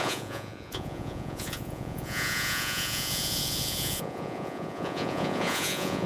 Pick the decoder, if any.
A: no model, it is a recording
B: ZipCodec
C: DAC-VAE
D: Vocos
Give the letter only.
D